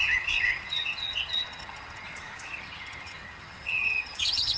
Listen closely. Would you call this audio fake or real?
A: fake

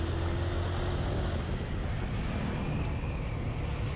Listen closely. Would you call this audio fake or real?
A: real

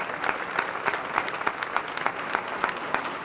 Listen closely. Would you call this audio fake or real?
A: real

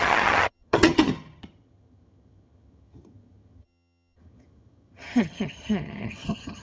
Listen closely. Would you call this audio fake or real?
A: fake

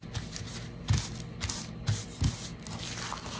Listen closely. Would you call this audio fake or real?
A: real